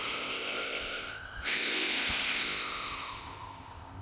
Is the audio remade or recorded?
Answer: remade